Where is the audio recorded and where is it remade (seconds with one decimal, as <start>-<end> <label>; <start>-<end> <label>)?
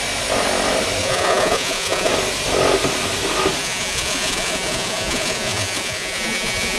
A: 0.0-1.0 recorded; 1.0-2.1 remade; 2.1-3.6 recorded; 3.6-6.8 remade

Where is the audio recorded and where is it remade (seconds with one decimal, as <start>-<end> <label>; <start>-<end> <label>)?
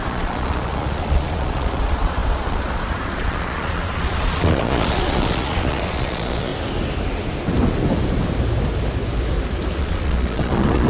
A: 0.0-6.5 remade; 6.5-9.8 recorded; 9.8-10.9 remade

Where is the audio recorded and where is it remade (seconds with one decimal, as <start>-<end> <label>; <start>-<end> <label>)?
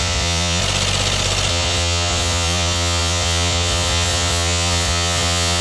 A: 0.0-0.6 remade; 0.6-1.5 recorded; 1.5-5.6 remade